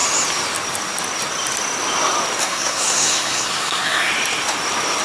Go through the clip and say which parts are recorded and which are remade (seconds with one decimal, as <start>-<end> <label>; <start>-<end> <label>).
0.0-2.4 recorded; 2.4-4.1 remade; 4.1-5.0 recorded